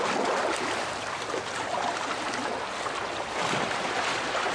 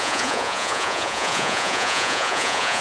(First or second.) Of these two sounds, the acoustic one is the first